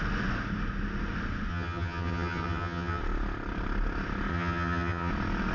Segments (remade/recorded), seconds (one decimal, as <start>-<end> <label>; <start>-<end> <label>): 0.0-1.5 recorded; 1.5-3.0 remade; 3.0-4.3 recorded; 4.3-5.1 remade; 5.1-5.5 recorded